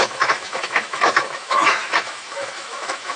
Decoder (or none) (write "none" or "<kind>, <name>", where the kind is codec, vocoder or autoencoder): autoencoder, DAC-VAE